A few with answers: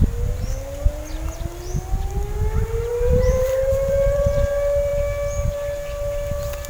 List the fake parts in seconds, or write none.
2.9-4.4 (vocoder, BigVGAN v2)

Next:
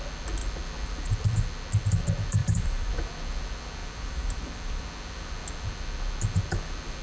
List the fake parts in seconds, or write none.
2.4-2.9 (vocoder, BigVGAN v2); 3.8-4.8

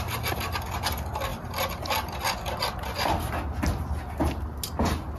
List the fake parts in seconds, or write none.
none

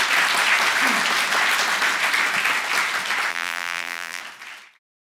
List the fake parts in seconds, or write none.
3.3-4.2 (vocoder, BigVGAN v2)

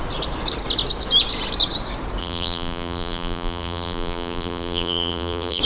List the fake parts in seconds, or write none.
2.2-5.6 (vocoder, BigVGAN v2)

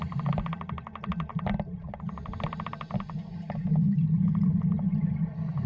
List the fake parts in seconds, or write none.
none